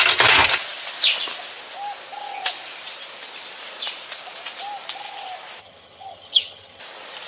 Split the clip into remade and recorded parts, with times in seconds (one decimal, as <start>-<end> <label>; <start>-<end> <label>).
0.0-5.6 recorded; 5.6-6.8 remade; 6.8-7.3 recorded